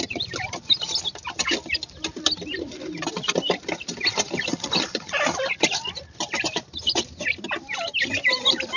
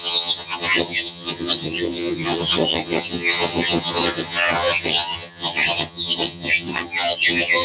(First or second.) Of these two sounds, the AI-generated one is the second